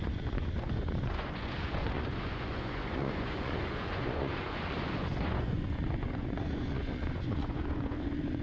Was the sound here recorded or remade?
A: remade